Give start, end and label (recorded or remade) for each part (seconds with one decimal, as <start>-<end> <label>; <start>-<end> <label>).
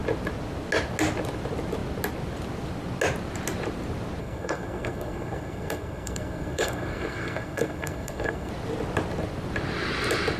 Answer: 0.0-4.2 recorded; 4.2-8.5 remade; 8.5-10.4 recorded